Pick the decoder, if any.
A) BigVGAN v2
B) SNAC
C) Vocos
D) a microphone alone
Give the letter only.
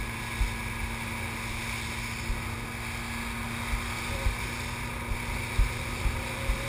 D